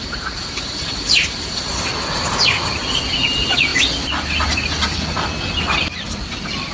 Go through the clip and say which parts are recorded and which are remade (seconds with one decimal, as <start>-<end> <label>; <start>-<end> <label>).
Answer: 0.0-1.7 remade; 1.7-6.7 recorded